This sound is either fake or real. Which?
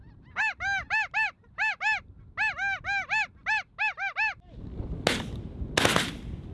real